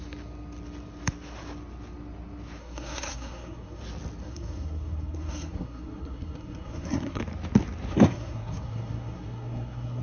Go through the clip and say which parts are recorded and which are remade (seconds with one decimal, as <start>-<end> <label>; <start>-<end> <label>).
0.0-2.6 recorded; 2.6-3.8 remade; 3.8-4.2 recorded; 4.2-7.2 remade; 7.2-7.9 recorded; 7.9-10.0 remade